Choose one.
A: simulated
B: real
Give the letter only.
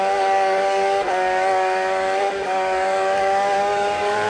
A